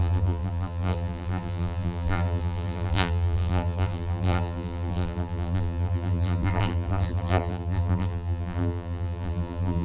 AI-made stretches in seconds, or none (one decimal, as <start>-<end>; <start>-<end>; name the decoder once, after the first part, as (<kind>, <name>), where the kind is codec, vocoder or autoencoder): 0.0-9.8 (vocoder, BigVGAN v2)